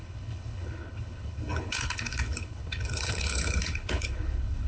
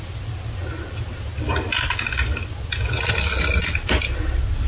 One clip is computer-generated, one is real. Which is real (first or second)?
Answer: second